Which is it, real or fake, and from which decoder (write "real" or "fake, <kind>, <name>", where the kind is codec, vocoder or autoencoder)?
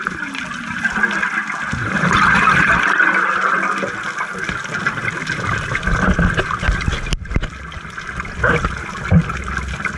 real